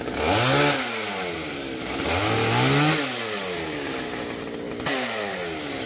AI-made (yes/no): no